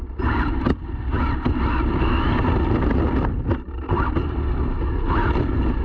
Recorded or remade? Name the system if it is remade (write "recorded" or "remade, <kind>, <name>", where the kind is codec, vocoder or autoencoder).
recorded